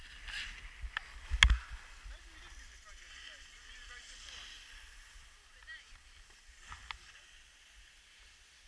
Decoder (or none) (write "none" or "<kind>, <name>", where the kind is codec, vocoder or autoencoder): none